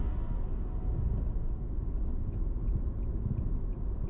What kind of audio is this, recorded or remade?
recorded